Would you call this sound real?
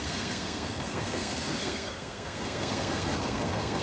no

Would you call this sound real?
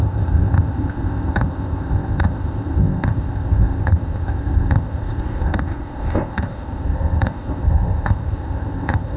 no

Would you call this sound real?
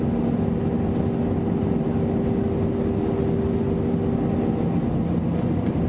yes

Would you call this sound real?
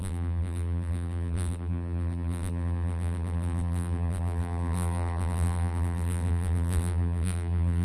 no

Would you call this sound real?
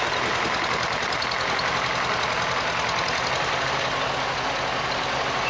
yes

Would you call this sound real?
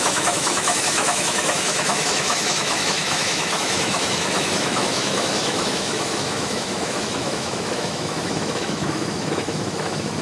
no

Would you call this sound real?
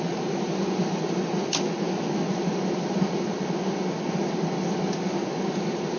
yes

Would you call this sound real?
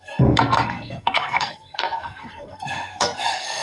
no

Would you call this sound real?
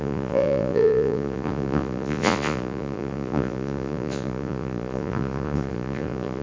no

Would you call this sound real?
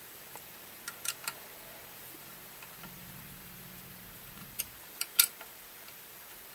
no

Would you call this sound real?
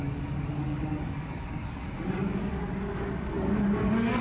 no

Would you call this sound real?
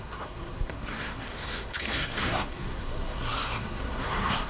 no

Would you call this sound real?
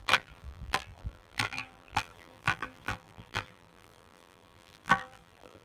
no